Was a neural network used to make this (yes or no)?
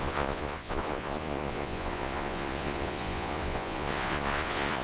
yes